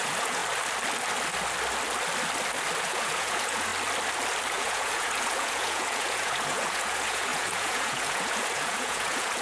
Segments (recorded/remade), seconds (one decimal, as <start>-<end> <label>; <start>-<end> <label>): 0.0-0.4 remade; 0.4-2.8 recorded; 2.8-3.7 remade; 3.7-4.5 recorded; 4.5-9.4 remade